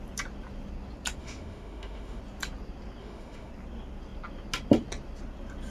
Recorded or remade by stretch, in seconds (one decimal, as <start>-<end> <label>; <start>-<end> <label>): 0.0-1.2 recorded; 1.2-2.2 remade; 2.2-3.0 recorded; 3.0-3.5 remade; 3.5-5.7 recorded

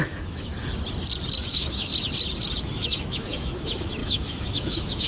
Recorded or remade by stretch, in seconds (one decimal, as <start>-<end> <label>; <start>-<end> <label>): 0.0-0.5 remade; 0.5-1.4 recorded; 1.4-1.9 remade; 1.9-2.6 recorded; 2.6-5.1 remade

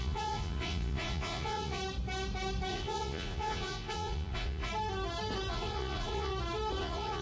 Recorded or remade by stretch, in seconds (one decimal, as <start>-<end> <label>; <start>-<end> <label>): 0.0-1.8 remade; 1.8-2.7 recorded; 2.7-4.7 remade; 4.7-5.5 recorded; 5.5-6.3 remade; 6.3-6.8 recorded; 6.8-7.2 remade

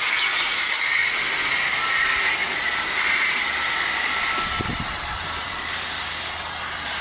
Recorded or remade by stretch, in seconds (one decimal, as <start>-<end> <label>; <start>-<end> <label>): 0.0-0.5 remade; 0.5-1.7 recorded; 1.7-7.0 remade

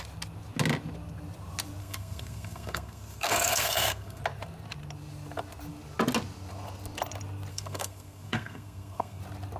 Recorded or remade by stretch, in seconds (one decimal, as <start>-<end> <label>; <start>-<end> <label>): 0.0-1.8 recorded; 1.8-4.2 remade; 4.2-7.5 recorded; 7.5-9.2 remade; 9.2-9.6 recorded

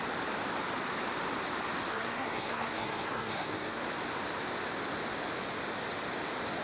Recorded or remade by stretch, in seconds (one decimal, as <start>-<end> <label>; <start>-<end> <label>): 0.0-1.9 recorded; 1.9-3.8 remade; 3.8-6.6 recorded

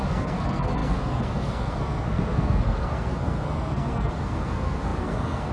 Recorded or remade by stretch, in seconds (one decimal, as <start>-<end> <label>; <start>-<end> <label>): 0.0-5.5 remade

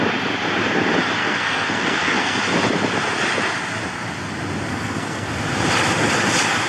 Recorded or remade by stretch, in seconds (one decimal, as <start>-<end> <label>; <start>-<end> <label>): 0.0-1.2 recorded; 1.2-2.4 remade; 2.4-4.7 recorded; 4.7-5.3 remade; 5.3-6.7 recorded